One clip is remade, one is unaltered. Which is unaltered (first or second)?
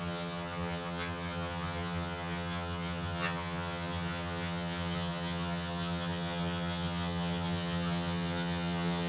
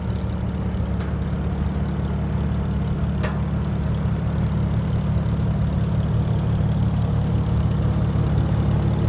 second